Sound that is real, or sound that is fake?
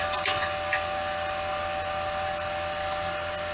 real